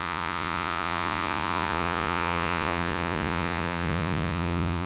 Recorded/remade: remade